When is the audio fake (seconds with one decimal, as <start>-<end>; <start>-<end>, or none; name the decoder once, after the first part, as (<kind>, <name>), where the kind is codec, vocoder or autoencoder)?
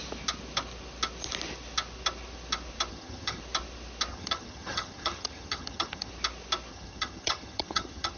2.9-3.4 (vocoder, HiFi-GAN); 4.1-6.1; 6.7-8.2